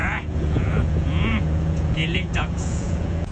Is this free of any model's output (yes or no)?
no